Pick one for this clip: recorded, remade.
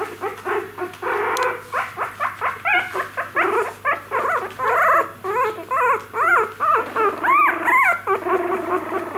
recorded